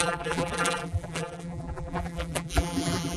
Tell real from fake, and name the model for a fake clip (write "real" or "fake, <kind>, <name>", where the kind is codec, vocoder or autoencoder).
fake, vocoder, BigVGAN v2